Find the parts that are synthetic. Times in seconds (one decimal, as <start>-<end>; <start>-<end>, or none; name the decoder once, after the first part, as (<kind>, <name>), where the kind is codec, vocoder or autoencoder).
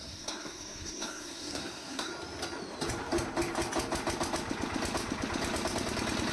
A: 0.0-2.1 (codec, SNAC)